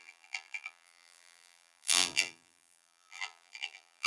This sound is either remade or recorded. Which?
remade